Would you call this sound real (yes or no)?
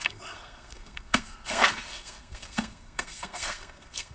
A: no